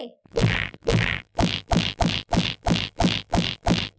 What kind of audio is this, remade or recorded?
remade